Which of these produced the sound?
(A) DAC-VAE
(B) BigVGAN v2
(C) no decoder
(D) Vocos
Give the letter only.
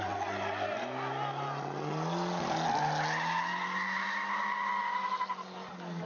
C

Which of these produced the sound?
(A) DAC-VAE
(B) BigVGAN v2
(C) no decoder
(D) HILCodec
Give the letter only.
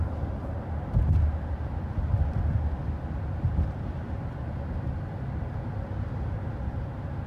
C